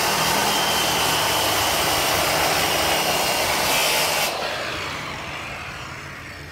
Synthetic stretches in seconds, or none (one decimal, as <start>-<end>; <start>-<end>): none